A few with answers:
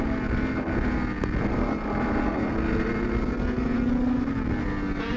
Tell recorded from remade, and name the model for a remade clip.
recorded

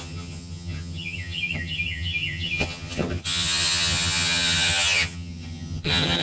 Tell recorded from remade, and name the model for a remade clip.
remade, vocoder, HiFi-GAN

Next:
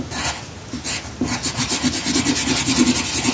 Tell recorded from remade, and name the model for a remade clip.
recorded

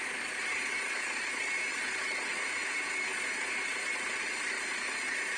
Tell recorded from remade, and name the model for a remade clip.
recorded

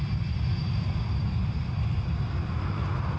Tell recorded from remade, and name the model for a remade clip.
recorded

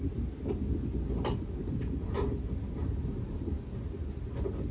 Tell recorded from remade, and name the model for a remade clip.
recorded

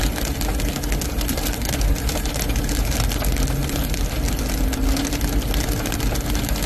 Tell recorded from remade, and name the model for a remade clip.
recorded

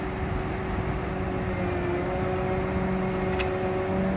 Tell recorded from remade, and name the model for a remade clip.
recorded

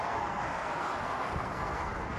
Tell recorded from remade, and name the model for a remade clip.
remade, codec, SNAC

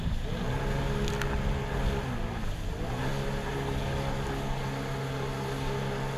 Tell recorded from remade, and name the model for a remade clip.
recorded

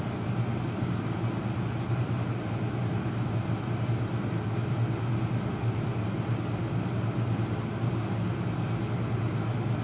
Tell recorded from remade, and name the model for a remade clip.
recorded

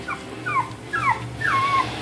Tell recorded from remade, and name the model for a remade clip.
recorded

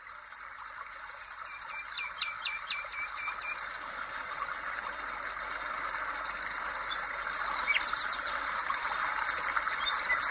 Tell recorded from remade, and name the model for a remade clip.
remade, vocoder, BigVGAN v2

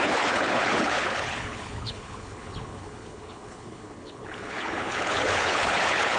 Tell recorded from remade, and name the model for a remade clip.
remade, codec, HILCodec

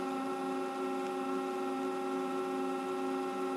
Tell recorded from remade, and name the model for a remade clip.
recorded